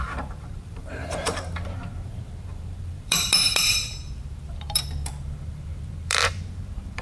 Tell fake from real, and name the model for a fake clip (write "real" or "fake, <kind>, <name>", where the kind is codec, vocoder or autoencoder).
fake, vocoder, BigVGAN v2